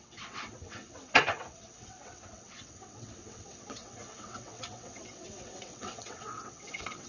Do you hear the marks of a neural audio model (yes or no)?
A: yes